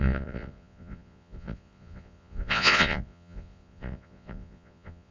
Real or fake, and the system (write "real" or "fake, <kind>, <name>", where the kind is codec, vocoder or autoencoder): fake, vocoder, Vocos